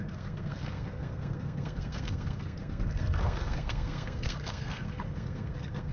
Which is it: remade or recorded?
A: remade